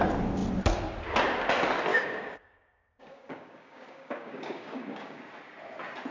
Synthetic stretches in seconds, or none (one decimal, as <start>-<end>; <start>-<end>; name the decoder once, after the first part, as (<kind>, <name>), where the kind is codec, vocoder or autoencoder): 1.9-5.2 (codec, DAC)